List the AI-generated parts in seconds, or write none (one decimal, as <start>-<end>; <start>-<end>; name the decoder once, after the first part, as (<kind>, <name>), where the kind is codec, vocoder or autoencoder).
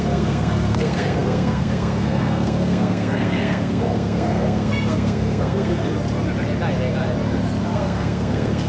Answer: 0.0-5.9 (codec, SNAC); 7.6-8.7